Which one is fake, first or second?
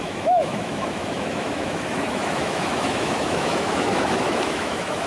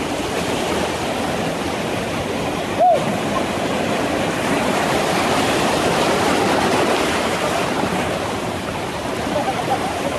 first